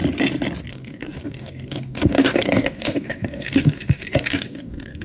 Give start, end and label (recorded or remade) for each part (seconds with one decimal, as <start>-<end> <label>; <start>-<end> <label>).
0.0-0.7 recorded; 0.7-5.0 remade